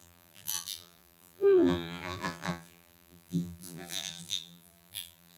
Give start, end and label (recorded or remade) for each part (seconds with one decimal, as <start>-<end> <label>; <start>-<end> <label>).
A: 0.0-5.4 remade